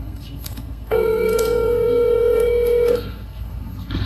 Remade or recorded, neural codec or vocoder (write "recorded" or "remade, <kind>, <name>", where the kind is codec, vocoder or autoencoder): remade, codec, SNAC